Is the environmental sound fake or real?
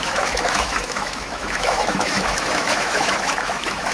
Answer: fake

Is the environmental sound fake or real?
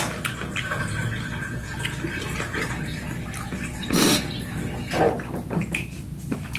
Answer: real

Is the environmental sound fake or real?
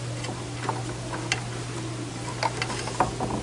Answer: real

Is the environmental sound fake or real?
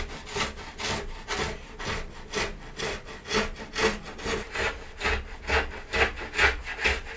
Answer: real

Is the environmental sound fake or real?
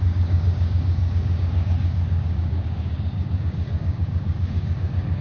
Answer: fake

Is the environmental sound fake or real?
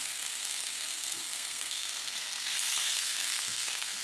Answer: fake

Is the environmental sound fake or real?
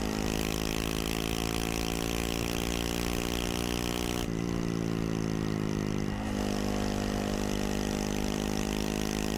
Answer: real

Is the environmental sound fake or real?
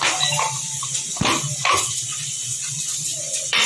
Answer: fake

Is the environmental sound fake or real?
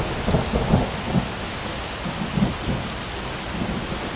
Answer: real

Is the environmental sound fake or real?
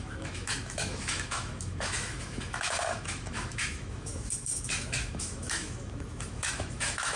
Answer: fake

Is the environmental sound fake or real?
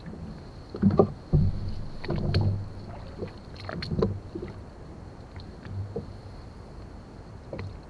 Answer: real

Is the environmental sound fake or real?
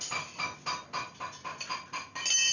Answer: real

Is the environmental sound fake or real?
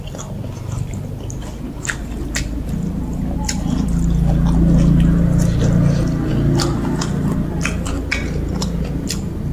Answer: real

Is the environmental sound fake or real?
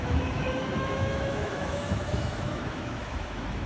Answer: fake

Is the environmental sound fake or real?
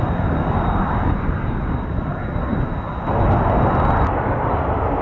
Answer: real